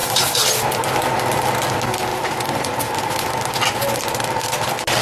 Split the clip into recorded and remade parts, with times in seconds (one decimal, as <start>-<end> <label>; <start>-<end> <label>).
0.0-2.1 recorded; 2.1-2.9 remade; 2.9-5.0 recorded